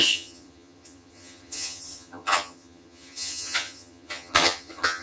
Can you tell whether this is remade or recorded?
remade